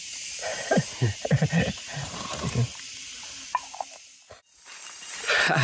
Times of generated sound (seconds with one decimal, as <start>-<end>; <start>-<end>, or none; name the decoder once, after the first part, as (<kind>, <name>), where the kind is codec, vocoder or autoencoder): 0.5-1.5 (vocoder, BigVGAN v2); 1.9-3.4